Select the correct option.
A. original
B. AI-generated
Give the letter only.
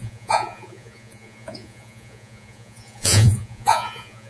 B